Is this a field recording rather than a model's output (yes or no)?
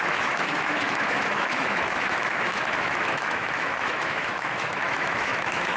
no